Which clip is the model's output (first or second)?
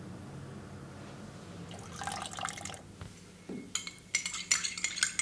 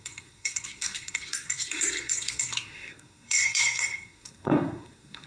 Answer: second